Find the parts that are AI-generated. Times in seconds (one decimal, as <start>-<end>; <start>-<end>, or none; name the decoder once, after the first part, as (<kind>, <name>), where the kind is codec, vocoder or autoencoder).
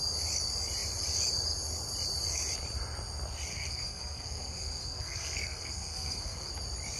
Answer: 3.5-6.5 (codec, SNAC)